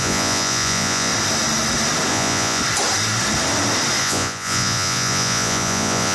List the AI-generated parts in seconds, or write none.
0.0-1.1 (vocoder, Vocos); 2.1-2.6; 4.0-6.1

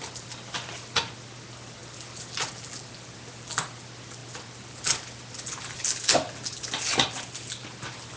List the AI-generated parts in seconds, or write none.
none